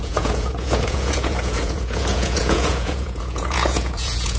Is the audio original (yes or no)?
no